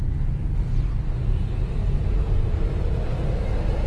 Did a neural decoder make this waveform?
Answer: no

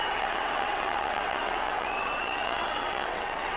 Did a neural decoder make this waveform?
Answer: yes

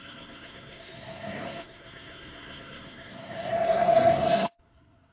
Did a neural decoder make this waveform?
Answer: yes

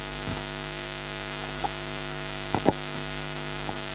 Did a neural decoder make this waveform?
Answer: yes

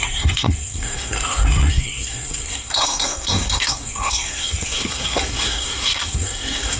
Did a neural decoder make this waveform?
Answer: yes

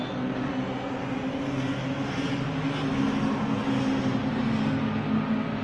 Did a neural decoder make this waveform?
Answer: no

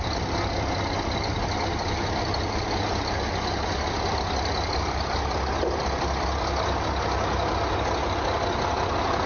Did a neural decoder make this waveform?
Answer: no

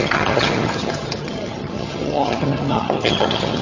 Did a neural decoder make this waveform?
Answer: yes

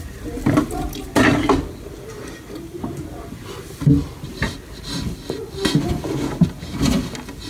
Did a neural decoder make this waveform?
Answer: no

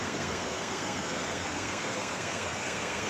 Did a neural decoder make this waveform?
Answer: yes